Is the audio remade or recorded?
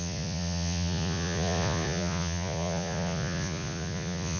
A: remade